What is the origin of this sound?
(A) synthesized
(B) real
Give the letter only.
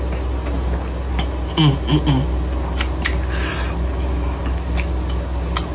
B